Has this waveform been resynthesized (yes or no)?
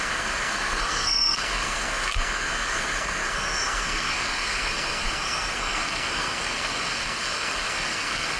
yes